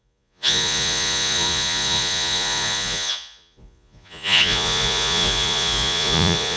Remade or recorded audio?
remade